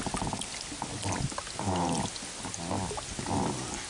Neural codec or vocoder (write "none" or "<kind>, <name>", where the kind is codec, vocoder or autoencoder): none